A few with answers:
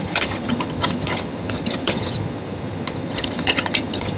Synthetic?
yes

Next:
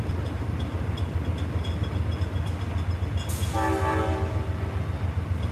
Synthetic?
no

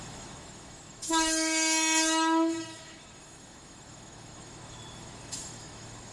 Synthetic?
yes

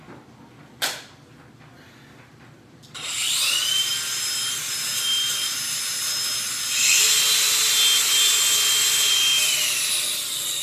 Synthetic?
no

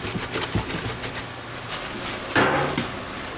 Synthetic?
no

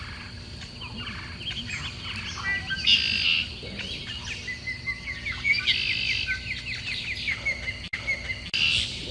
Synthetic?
no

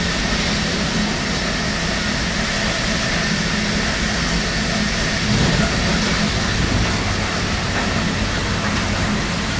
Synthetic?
no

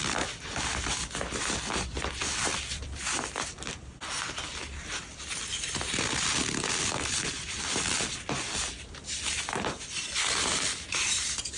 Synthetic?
no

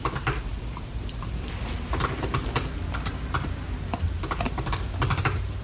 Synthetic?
no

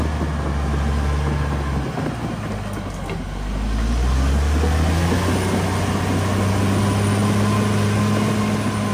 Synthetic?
no